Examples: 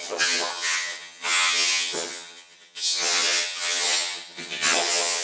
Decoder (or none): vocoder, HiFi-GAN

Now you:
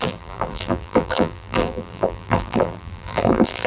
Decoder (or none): vocoder, BigVGAN v2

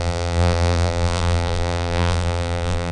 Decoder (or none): vocoder, BigVGAN v2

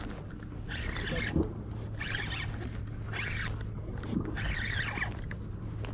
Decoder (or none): none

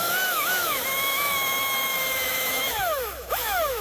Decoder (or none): autoencoder, DAC-VAE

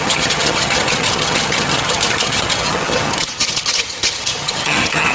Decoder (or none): vocoder, HiFi-GAN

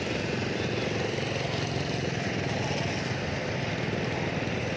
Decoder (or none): none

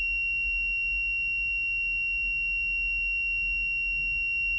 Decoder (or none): none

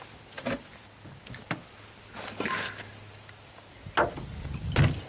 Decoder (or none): none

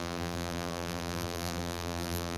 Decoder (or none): vocoder, BigVGAN v2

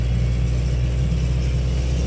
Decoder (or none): none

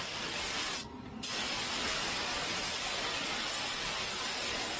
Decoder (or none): none